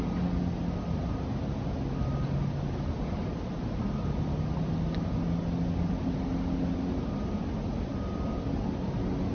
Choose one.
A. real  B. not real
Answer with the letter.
A